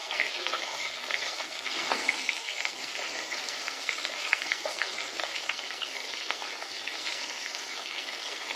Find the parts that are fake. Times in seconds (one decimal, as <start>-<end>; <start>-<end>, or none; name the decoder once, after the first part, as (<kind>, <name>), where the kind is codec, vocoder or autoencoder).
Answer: 0.0-8.6 (codec, SNAC)